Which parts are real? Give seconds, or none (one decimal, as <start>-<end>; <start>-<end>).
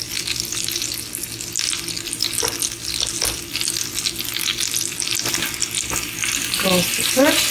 0.0-4.5; 5.3-7.5